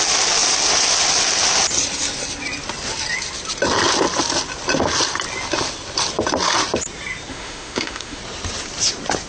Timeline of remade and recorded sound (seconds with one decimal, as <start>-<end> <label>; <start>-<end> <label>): 0.0-7.3 recorded; 7.3-8.2 remade; 8.2-9.3 recorded